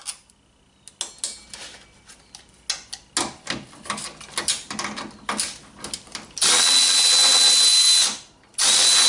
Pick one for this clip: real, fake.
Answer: real